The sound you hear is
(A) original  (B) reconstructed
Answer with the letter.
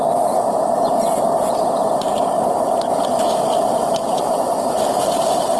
A